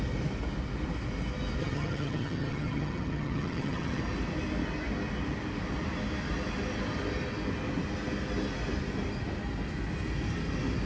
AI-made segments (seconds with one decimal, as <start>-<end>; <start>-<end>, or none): 1.6-4.0

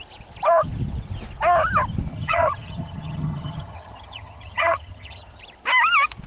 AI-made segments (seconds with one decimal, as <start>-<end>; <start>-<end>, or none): 2.1-5.4

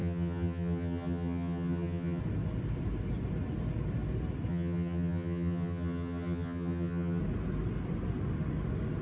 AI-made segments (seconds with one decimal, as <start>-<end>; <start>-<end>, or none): 0.0-2.2; 4.5-7.2